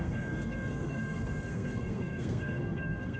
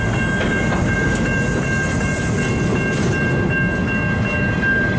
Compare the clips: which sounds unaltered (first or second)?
second